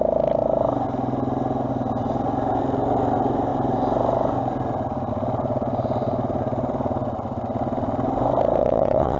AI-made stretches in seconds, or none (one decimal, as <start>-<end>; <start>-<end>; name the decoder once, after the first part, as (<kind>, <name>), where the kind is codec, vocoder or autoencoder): 8.6-9.2 (vocoder, WaveNeXt)